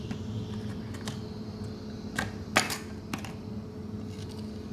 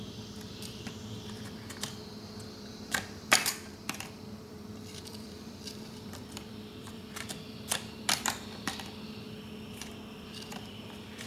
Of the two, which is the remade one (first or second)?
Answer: second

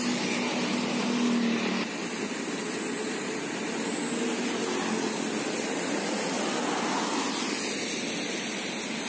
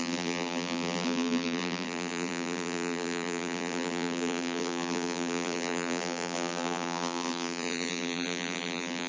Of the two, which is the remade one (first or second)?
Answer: second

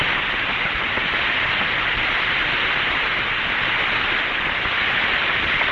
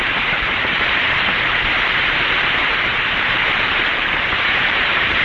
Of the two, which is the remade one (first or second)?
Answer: second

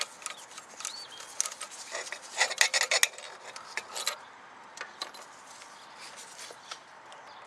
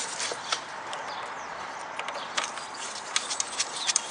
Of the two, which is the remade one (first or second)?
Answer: second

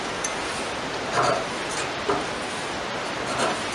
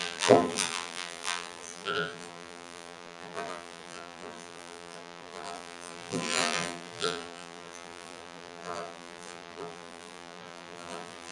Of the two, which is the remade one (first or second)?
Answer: second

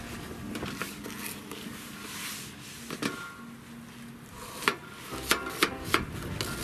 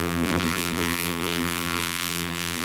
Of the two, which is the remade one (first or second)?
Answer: second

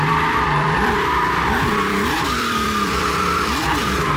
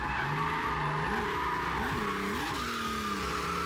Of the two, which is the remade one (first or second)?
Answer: first